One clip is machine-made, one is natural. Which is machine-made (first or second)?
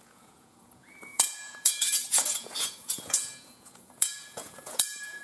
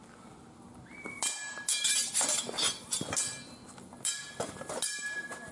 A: first